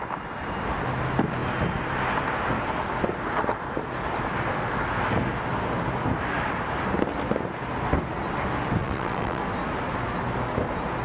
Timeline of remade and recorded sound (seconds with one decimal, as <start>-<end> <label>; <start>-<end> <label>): 0.0-8.8 recorded; 8.8-9.4 remade; 9.4-11.0 recorded